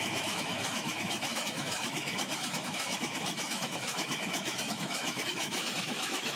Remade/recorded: remade